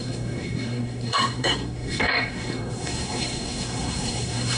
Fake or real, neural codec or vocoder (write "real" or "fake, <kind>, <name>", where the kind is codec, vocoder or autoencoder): fake, codec, SNAC